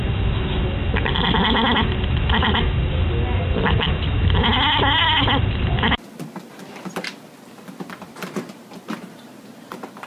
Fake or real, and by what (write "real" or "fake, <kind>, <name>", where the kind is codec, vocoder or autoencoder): real